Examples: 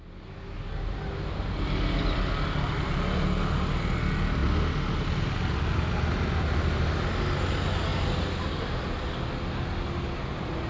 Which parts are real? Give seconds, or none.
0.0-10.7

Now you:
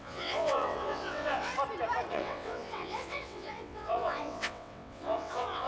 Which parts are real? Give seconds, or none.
1.5-2.1